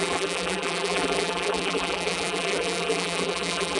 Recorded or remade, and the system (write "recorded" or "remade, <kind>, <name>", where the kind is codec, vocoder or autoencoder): remade, vocoder, BigVGAN v2